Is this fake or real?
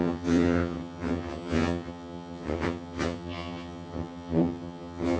fake